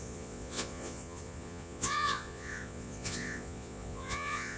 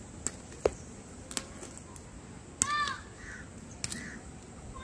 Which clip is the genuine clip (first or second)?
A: second